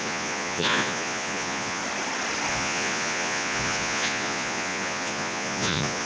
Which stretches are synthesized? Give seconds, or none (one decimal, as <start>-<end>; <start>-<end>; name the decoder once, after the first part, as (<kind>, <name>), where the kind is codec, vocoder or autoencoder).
0.0-1.8 (vocoder, Vocos); 2.5-6.0

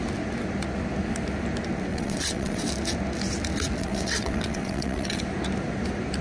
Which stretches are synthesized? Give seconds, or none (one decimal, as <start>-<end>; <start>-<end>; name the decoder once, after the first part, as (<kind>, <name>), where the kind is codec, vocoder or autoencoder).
1.9-2.7 (vocoder, WaveNeXt); 3.8-5.2

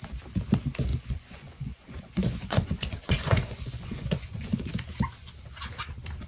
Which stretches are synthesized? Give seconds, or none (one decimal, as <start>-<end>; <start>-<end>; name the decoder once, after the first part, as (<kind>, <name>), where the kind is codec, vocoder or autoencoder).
0.9-4.7 (vocoder, Vocos)

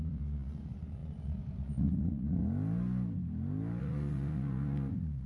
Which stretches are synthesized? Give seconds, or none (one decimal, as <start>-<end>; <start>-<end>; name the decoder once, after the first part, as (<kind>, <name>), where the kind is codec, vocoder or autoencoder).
0.0-2.4 (vocoder, Vocos); 3.8-5.3